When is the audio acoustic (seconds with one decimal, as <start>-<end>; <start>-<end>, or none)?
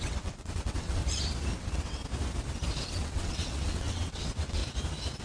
1.0-1.6; 2.0-2.9; 4.6-5.2